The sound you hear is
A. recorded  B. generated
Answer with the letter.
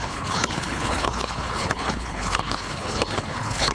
B